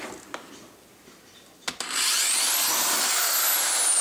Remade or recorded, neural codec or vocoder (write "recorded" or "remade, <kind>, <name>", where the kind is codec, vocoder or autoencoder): recorded